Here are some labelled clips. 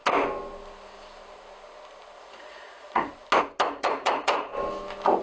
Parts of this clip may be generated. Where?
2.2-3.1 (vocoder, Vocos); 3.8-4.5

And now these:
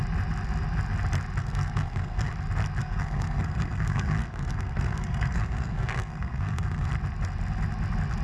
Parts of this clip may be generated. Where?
1.4-2.3 (codec, SNAC); 2.8-6.9